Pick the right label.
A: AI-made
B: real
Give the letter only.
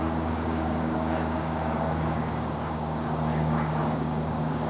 A